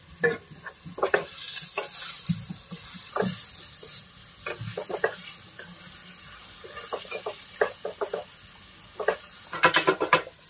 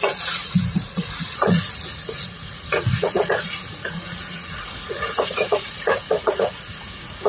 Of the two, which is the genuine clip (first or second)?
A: first